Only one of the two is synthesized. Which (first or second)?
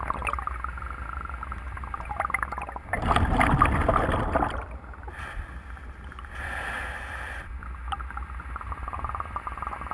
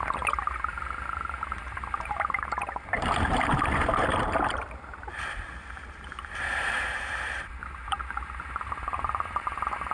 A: second